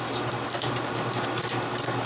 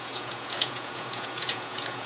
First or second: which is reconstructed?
second